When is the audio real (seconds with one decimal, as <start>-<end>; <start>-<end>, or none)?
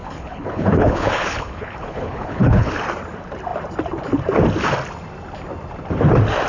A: 2.7-6.5